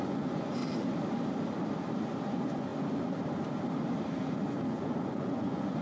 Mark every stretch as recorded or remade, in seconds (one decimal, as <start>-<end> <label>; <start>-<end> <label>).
0.0-0.6 remade; 0.6-2.3 recorded; 2.3-2.7 remade; 2.7-4.2 recorded; 4.2-5.8 remade